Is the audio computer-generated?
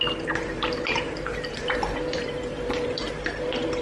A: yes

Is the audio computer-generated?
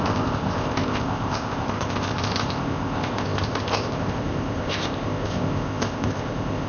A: yes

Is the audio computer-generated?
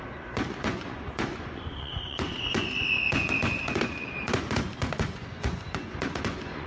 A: yes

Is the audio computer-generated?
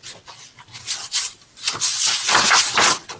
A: no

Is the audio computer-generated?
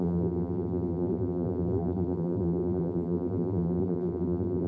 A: yes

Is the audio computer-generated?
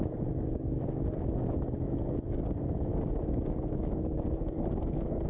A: yes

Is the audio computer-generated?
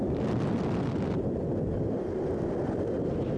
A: no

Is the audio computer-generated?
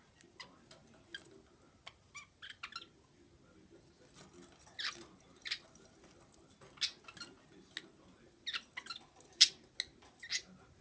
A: no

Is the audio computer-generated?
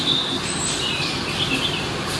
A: no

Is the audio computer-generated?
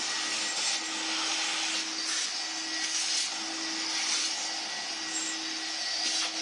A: no